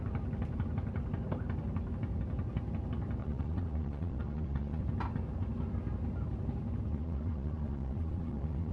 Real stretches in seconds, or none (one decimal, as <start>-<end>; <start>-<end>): 0.0-3.2; 4.8-6.9